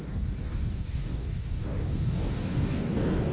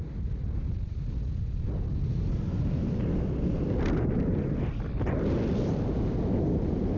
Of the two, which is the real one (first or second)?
second